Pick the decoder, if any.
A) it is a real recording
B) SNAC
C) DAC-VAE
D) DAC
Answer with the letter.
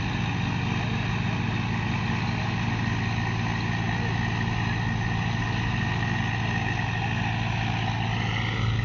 A